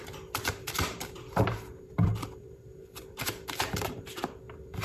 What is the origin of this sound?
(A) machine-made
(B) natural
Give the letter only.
A